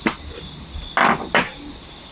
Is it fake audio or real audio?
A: real